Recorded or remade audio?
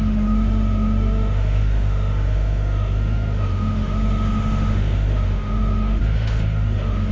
remade